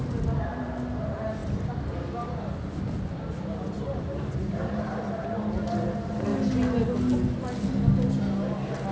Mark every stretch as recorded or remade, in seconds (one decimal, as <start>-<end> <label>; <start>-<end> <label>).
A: 0.0-8.9 recorded